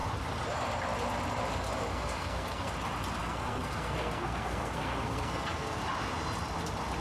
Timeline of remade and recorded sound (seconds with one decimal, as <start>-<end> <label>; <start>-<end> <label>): 0.0-1.9 recorded; 1.9-2.7 remade; 2.7-3.2 recorded; 3.2-5.8 remade; 5.8-7.0 recorded